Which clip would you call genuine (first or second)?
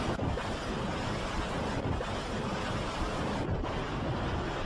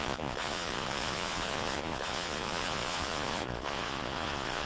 first